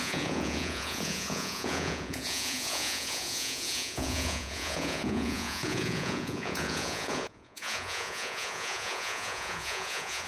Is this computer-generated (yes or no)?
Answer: yes